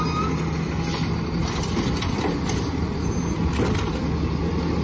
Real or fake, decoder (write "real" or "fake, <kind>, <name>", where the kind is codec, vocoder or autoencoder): real